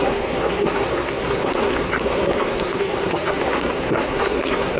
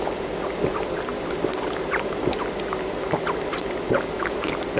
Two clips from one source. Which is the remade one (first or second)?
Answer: first